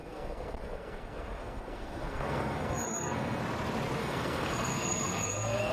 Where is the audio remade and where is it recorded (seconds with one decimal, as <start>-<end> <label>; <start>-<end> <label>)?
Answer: 0.0-3.4 remade; 3.4-4.0 recorded; 4.0-5.7 remade